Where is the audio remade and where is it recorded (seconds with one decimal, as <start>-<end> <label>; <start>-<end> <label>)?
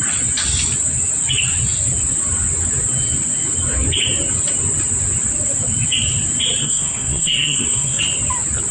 0.0-6.6 recorded; 6.6-8.0 remade; 8.0-8.7 recorded